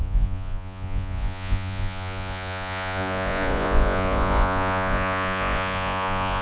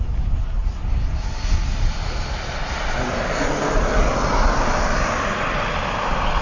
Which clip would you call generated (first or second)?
first